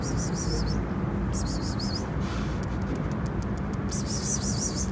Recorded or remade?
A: recorded